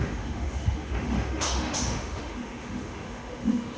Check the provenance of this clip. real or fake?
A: fake